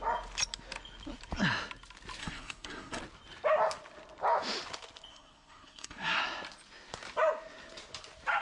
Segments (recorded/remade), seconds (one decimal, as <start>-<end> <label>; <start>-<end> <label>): 0.0-2.2 recorded; 2.2-3.0 remade; 3.0-5.1 recorded; 5.1-6.2 remade; 6.2-8.4 recorded